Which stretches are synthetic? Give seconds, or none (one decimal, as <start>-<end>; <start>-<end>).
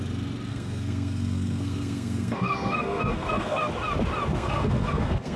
0.5-3.7; 4.3-5.4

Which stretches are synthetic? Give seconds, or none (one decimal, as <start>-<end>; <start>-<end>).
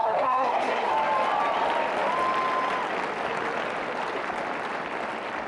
0.0-0.9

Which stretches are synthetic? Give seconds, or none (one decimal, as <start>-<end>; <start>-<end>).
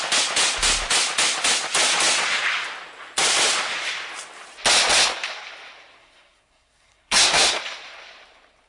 6.0-7.6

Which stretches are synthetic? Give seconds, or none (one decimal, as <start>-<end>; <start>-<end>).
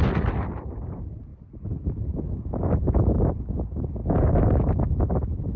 none